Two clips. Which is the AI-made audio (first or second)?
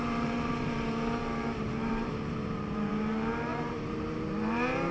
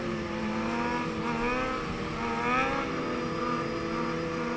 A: first